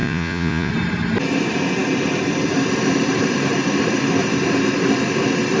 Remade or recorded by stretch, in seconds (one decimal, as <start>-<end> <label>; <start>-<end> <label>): 0.0-0.7 remade; 0.7-5.6 recorded